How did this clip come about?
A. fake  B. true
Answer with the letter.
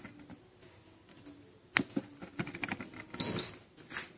B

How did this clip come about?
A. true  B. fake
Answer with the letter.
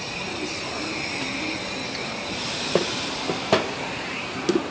A